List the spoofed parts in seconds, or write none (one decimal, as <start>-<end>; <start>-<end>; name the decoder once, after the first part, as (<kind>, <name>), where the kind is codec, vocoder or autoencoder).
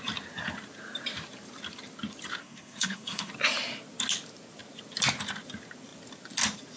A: 2.4-3.3 (codec, SNAC)